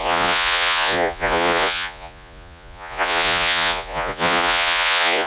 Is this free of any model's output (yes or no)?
no